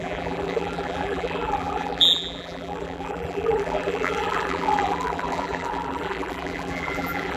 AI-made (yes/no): yes